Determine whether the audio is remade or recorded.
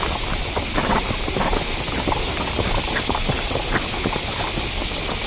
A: recorded